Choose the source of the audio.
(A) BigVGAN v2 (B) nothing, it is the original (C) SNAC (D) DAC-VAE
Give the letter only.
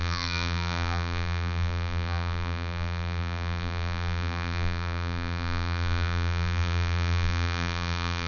A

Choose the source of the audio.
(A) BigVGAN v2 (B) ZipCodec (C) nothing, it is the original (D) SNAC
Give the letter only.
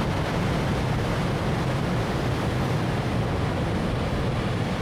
C